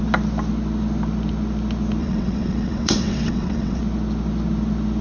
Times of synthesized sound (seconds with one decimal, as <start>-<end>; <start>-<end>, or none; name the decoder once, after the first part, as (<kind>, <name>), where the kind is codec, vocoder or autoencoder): 2.0-3.8 (vocoder, WaveNeXt)